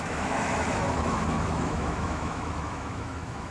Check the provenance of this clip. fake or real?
fake